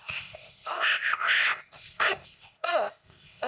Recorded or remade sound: remade